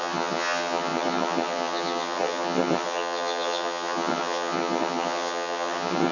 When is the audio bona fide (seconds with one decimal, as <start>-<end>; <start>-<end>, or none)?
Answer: none